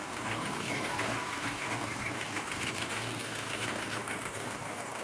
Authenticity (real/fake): fake